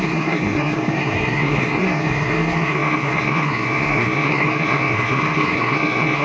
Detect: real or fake fake